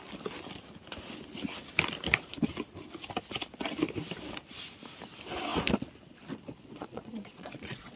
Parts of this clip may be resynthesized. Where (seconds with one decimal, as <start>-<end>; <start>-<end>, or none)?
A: 6.6-8.0